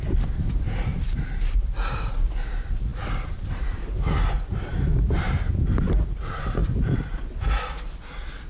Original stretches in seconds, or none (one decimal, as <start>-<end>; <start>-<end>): 6.6-8.5